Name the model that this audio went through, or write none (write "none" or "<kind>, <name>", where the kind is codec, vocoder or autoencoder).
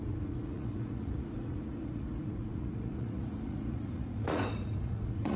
vocoder, Vocos